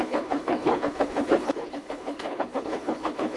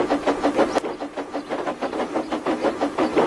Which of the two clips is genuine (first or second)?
second